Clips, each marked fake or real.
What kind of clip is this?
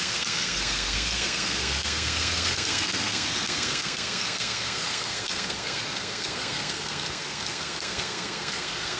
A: fake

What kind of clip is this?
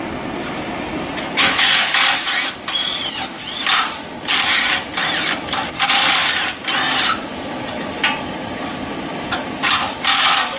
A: real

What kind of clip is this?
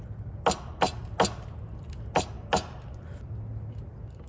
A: real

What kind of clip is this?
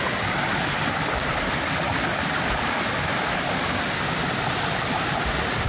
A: real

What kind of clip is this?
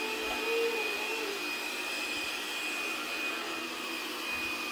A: real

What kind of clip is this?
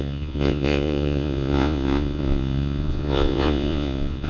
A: fake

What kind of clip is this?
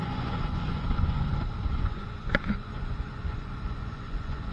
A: fake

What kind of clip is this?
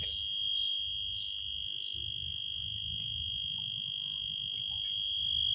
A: real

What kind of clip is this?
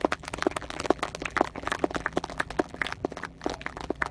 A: fake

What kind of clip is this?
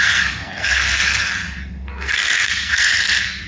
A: fake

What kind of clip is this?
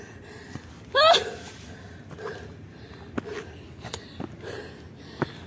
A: real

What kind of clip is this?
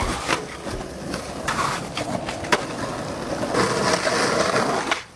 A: real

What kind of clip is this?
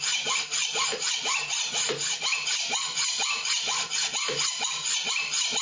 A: real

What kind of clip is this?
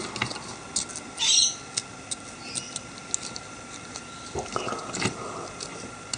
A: real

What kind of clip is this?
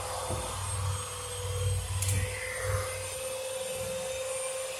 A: real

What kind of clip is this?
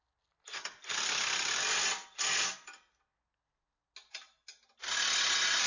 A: real